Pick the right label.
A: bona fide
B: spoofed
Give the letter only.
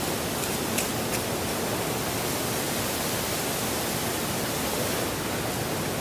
A